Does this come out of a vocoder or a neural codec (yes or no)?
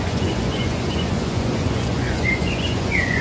yes